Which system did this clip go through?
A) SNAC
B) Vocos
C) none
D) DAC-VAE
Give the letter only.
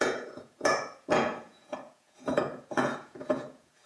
B